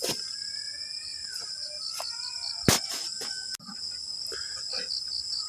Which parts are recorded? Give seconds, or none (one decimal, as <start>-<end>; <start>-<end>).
0.0-5.5